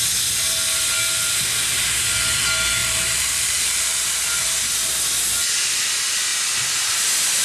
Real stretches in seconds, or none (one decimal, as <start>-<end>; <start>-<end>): 0.0-2.8; 3.8-7.4